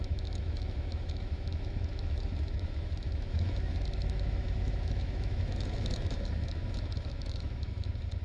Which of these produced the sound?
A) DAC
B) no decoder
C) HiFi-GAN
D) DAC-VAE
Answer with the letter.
D